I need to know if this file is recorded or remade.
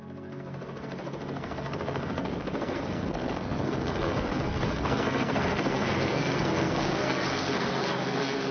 remade